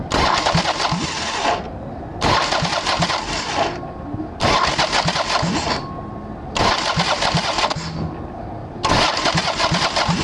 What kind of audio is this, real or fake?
real